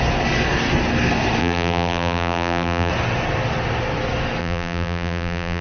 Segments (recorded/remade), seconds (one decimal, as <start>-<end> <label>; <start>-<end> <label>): 0.0-1.4 recorded; 1.4-2.9 remade; 2.9-4.4 recorded; 4.4-5.6 remade